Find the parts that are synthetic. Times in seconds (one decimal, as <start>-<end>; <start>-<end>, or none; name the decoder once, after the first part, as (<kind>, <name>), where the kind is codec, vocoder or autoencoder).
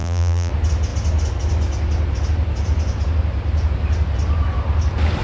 0.0-0.5 (vocoder, BigVGAN v2)